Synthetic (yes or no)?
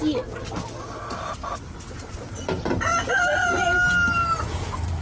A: no